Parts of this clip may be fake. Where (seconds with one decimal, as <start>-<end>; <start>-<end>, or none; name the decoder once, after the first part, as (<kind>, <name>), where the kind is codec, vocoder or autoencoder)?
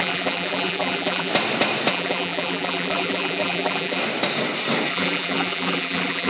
0.0-1.3 (vocoder, BigVGAN v2); 1.9-4.0; 4.9-6.3